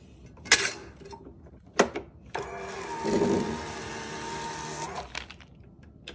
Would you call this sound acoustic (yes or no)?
yes